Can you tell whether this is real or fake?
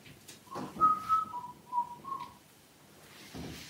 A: real